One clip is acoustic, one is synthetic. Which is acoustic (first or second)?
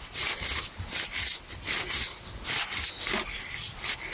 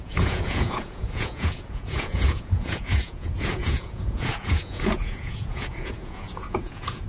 first